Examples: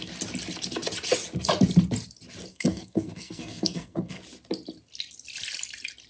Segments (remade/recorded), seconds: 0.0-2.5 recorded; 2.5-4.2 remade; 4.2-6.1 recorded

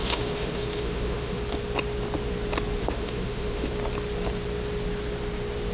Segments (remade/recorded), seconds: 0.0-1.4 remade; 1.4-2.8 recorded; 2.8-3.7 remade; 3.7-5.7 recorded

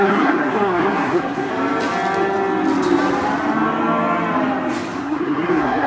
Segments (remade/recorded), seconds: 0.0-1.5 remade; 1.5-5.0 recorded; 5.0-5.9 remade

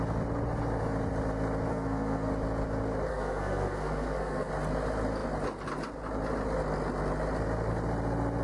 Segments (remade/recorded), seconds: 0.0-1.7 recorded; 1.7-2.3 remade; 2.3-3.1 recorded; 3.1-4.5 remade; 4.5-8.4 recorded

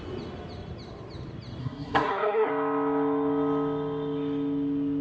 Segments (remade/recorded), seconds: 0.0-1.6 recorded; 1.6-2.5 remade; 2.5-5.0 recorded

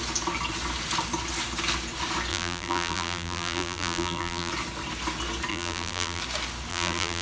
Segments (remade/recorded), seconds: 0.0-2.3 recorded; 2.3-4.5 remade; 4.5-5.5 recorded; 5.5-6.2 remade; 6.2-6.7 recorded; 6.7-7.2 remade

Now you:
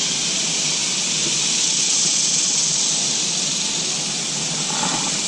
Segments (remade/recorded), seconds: 0.0-5.3 recorded

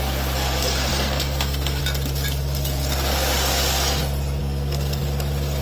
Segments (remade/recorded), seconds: 0.0-0.9 recorded; 0.9-1.8 remade; 1.8-4.4 recorded; 4.4-5.0 remade; 5.0-5.6 recorded